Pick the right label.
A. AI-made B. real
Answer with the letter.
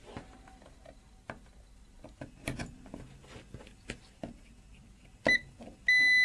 B